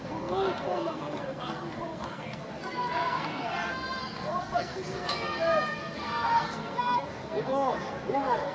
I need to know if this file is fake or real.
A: fake